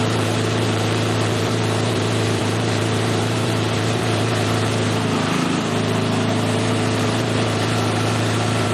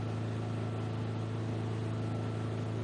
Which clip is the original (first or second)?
second